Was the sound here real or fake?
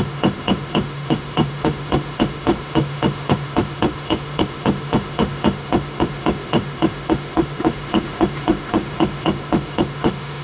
fake